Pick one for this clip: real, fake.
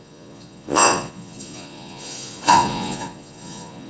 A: fake